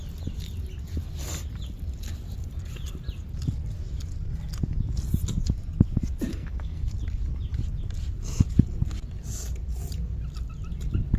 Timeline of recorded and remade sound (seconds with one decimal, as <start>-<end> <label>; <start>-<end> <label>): 0.0-6.3 recorded; 6.3-6.9 remade; 6.9-11.2 recorded